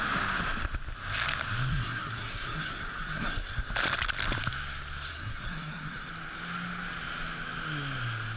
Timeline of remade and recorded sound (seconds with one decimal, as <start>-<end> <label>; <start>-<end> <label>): 0.0-1.7 recorded; 1.7-3.7 remade; 3.7-5.1 recorded; 5.1-6.1 remade; 6.1-8.4 recorded